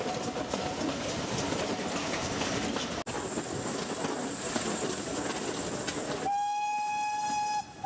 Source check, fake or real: real